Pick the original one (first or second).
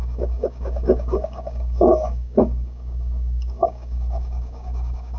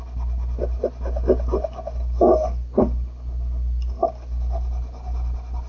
second